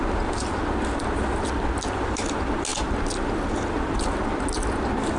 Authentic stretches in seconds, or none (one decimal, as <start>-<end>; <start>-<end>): 0.0-5.2